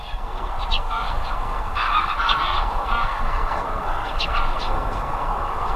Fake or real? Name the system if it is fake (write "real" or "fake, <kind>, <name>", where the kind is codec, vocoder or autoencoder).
fake, codec, SNAC